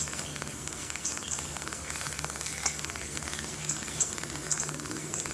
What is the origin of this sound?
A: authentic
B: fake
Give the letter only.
B